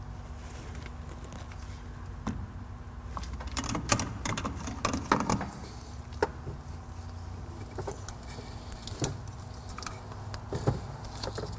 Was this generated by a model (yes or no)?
no